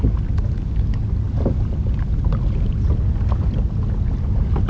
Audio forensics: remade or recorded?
recorded